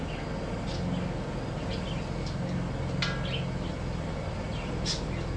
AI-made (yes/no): no